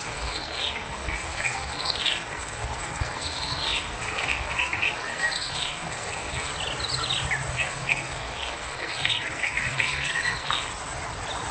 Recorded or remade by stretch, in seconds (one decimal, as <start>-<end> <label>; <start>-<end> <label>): 0.0-6.5 remade; 6.5-7.5 recorded; 7.5-10.7 remade; 10.7-11.5 recorded